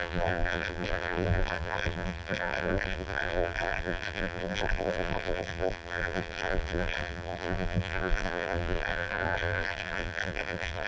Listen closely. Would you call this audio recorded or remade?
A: remade